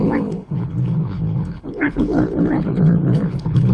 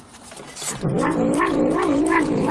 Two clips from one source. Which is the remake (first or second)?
first